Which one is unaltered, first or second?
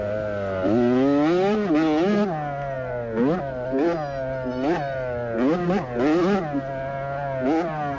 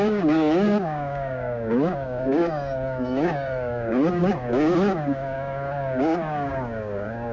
first